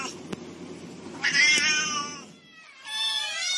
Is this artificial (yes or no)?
no